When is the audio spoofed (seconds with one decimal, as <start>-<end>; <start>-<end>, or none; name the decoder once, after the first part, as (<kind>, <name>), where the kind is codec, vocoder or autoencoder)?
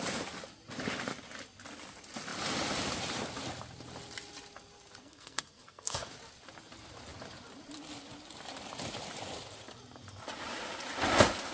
5.0-6.1 (codec, SNAC)